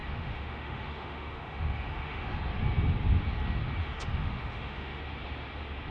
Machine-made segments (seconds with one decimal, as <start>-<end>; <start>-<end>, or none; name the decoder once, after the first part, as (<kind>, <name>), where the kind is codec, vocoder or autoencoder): 0.0-2.4 (autoencoder, DAC-VAE); 3.8-5.0